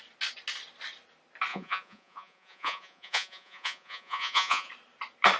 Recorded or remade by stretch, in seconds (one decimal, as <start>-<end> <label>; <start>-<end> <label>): 0.0-1.5 recorded; 1.5-4.7 remade; 4.7-5.4 recorded